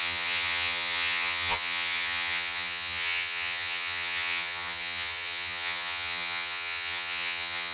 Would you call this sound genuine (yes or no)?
no